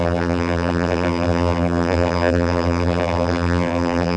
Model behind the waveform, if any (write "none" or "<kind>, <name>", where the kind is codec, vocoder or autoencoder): vocoder, BigVGAN v2